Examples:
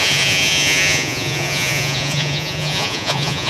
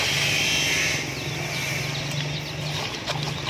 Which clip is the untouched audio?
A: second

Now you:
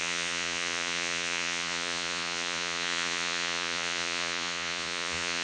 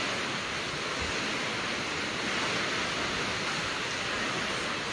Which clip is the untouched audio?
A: second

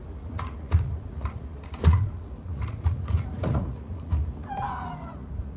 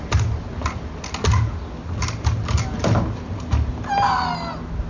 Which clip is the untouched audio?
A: second